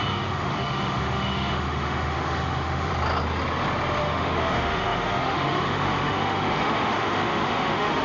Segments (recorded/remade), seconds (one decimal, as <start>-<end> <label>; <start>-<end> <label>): 0.0-2.9 remade; 2.9-4.0 recorded; 4.0-8.0 remade